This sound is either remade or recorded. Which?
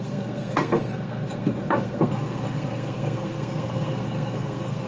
remade